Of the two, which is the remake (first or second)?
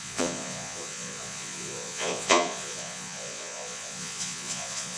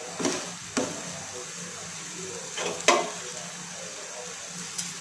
first